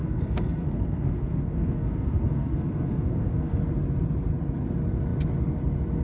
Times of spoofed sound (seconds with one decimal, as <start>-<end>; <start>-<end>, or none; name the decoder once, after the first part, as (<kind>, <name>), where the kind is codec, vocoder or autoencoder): 0.0-3.6 (codec, SNAC)